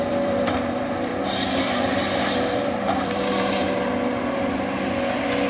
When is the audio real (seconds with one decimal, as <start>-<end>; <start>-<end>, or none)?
1.1-2.3; 3.6-5.5